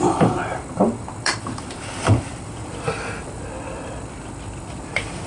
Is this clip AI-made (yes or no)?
yes